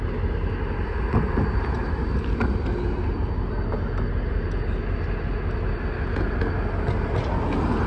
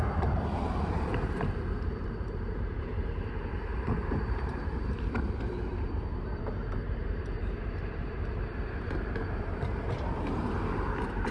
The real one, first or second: first